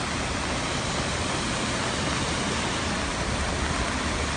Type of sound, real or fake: real